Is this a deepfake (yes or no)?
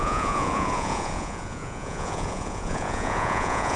yes